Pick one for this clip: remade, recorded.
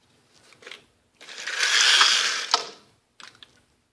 recorded